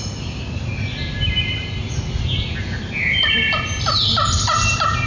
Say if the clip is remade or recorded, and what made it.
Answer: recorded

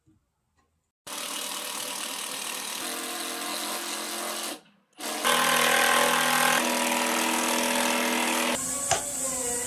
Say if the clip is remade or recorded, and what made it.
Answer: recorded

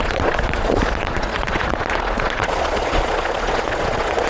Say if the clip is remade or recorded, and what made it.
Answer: remade, vocoder, Vocos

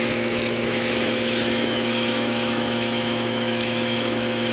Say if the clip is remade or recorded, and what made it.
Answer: remade, autoencoder, DAC-VAE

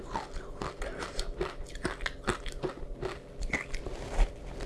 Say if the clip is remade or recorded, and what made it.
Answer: recorded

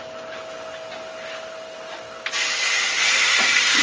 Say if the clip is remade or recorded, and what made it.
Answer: recorded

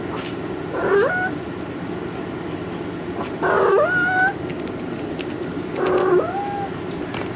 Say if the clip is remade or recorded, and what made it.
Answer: recorded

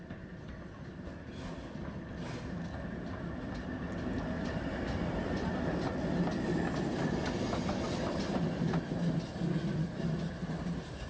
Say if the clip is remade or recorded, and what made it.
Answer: recorded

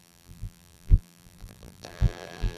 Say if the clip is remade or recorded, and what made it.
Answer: remade, vocoder, BigVGAN v2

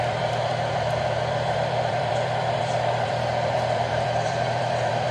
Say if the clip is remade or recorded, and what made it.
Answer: remade, vocoder, BigVGAN v2